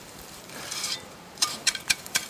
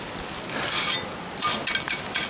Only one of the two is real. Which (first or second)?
second